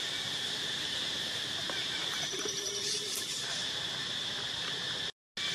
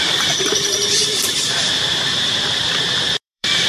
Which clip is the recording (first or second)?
first